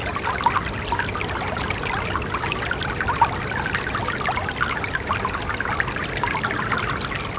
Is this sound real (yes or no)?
yes